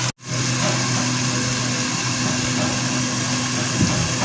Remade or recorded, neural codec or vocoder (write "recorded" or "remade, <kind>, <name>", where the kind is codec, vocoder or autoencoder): recorded